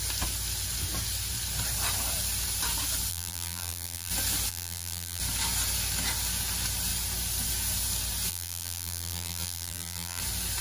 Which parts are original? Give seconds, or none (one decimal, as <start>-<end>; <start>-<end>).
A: 0.0-3.1; 4.1-4.5; 5.2-8.3; 10.2-10.6